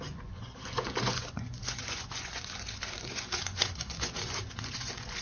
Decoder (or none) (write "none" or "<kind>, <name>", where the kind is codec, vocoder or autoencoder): vocoder, Vocos